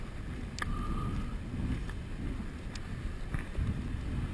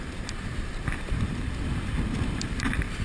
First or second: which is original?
first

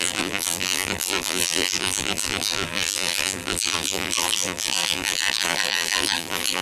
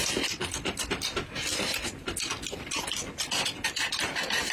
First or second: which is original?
second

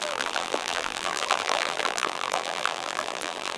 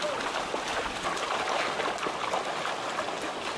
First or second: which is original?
second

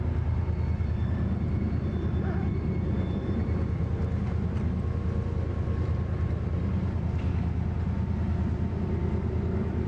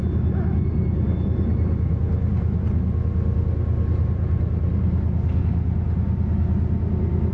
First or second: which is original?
second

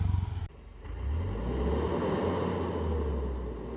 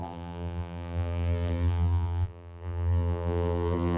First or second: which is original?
first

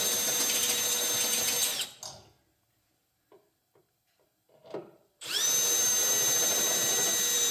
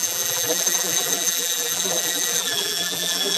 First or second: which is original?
first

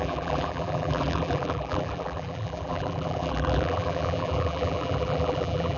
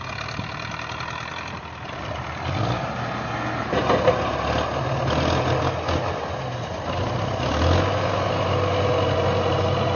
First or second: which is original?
second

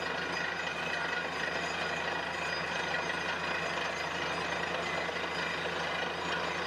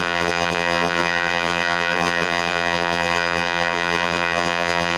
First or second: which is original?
first